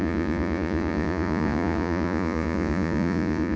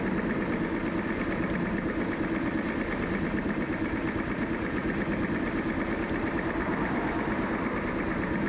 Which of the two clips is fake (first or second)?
first